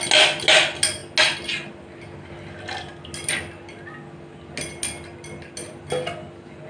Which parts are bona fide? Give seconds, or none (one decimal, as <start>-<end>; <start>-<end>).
0.0-6.7